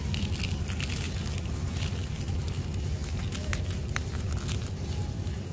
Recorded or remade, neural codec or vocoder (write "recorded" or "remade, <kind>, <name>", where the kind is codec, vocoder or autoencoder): recorded